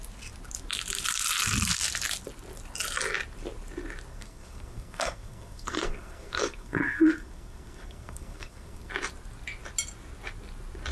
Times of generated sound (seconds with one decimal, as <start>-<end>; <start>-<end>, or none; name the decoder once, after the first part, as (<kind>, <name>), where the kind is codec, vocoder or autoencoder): 4.1-8.9 (codec, SNAC)

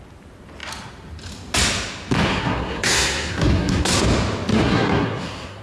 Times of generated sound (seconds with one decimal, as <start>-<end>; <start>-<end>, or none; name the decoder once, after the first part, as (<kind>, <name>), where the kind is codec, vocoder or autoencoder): 2.3-4.0 (codec, SNAC); 4.5-5.6

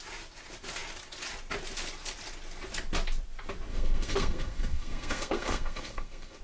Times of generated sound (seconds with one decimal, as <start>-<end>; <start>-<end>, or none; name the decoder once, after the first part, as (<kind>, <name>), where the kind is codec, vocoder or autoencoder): 3.7-6.4 (codec, SNAC)

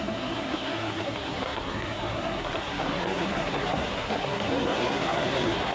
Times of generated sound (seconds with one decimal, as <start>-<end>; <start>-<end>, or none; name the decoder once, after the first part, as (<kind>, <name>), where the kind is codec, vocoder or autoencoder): 0.0-5.7 (codec, SNAC)